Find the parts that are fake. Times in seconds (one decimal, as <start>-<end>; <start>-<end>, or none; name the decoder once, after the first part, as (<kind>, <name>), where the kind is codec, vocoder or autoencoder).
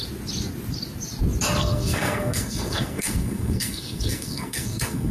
1.6-5.1 (codec, SNAC)